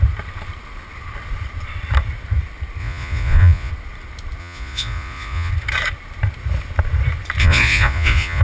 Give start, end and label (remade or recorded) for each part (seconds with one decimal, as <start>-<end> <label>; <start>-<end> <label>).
0.0-2.8 recorded; 2.8-3.7 remade; 3.7-4.4 recorded; 4.4-5.5 remade; 5.5-7.4 recorded; 7.4-8.4 remade